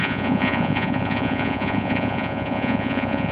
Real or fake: fake